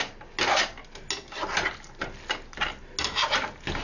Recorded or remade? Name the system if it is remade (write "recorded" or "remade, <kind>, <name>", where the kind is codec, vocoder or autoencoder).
recorded